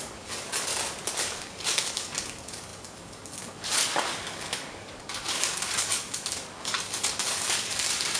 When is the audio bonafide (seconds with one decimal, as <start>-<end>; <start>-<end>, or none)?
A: 0.7-1.2